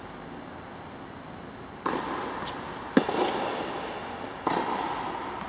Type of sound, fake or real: real